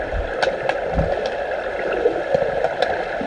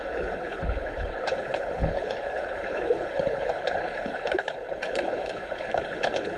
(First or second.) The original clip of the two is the first